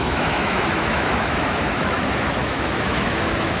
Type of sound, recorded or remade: remade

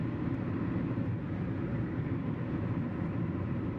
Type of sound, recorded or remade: recorded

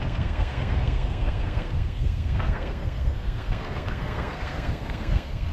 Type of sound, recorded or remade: remade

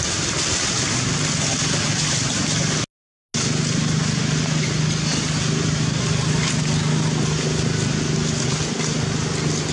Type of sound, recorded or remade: recorded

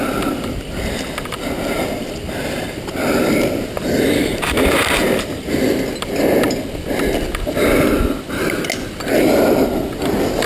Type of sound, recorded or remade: recorded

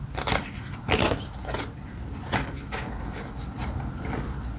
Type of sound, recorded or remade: recorded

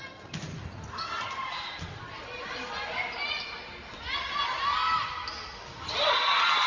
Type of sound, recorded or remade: recorded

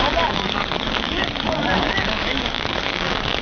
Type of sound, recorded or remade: remade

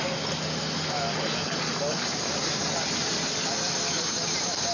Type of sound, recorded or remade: recorded